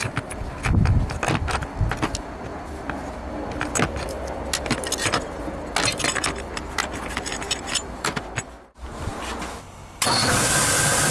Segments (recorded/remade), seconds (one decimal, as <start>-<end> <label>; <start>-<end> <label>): 0.0-7.3 recorded; 7.3-8.2 remade; 8.2-11.1 recorded